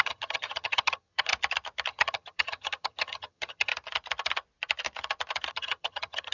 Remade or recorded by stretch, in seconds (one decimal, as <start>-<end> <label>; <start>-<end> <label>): 0.0-1.3 remade; 1.3-1.9 recorded; 1.9-3.7 remade; 3.7-5.5 recorded; 5.5-6.3 remade